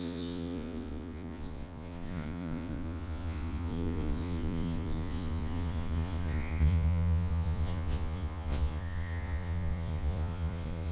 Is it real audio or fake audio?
fake